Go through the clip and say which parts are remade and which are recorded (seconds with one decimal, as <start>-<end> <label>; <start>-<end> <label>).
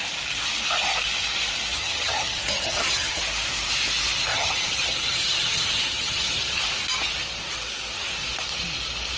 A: 0.0-1.7 recorded; 1.7-3.2 remade; 3.2-4.3 recorded; 4.3-6.6 remade; 6.6-9.2 recorded